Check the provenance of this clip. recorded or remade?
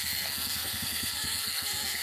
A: remade